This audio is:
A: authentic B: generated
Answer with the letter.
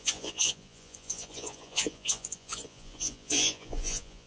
B